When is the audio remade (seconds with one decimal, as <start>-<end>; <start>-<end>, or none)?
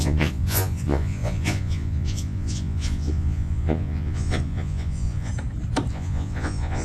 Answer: 0.0-5.3; 5.9-6.8